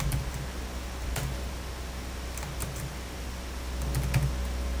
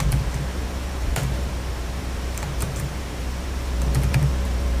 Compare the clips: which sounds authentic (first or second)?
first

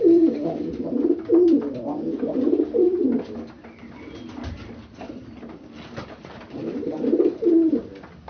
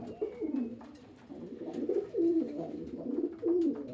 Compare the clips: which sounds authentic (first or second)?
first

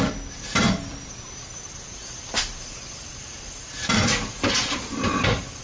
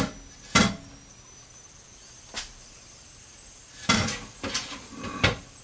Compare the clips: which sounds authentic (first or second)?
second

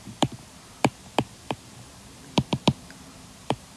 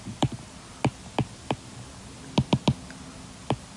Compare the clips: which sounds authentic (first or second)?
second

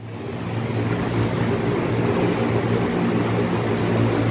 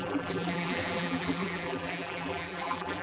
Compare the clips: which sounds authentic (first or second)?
first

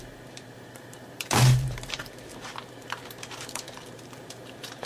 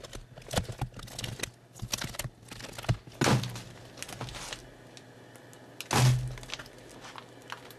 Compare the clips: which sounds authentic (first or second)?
second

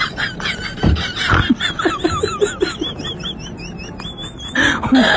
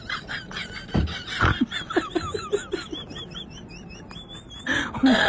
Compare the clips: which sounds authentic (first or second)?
first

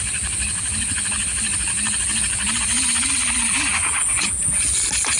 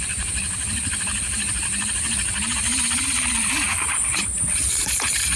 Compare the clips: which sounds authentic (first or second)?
first